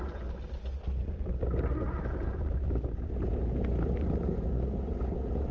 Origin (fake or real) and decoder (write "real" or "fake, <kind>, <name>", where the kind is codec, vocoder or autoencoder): real